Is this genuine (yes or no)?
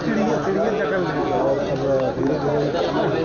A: yes